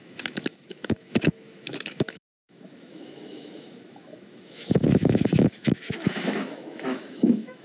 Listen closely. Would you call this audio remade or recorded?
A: remade